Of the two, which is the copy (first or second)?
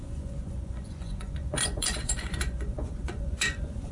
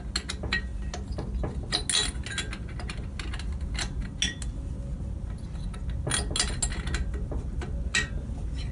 first